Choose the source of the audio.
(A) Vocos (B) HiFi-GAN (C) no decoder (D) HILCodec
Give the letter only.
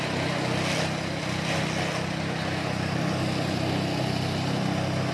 C